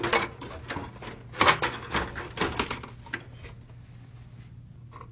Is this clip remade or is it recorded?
recorded